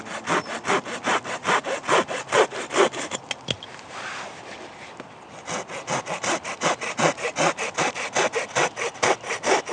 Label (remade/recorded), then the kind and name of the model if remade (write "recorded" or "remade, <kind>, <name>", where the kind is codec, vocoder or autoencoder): recorded